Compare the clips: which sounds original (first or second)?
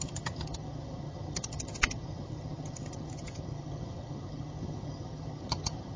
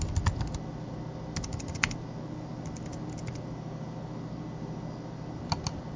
second